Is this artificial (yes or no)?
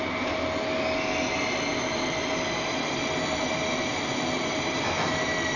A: no